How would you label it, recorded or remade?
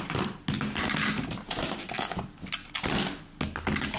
recorded